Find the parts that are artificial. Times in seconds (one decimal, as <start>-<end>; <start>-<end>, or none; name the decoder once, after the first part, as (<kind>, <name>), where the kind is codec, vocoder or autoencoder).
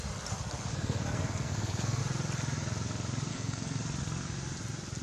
0.7-2.0 (codec, SNAC); 3.3-3.8